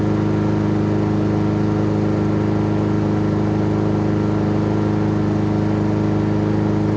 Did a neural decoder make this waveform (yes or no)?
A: no